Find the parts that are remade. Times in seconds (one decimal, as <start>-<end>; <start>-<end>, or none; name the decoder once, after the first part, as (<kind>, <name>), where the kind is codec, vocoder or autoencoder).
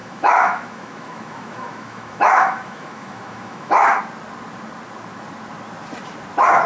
0.0-4.0 (autoencoder, DAC-VAE)